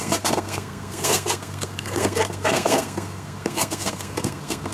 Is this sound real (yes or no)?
no